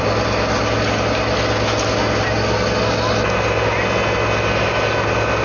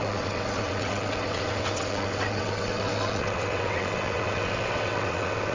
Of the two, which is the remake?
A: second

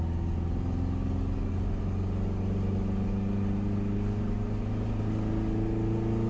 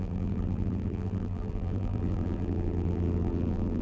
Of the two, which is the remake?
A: second